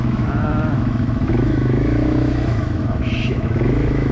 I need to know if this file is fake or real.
fake